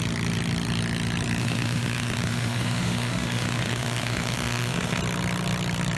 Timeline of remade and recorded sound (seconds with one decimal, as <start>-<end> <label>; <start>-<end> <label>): 0.0-1.4 recorded; 1.4-5.0 remade; 5.0-6.0 recorded